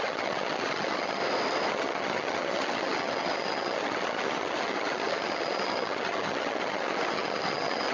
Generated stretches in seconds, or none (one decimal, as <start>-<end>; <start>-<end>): 0.0-1.2; 1.7-7.9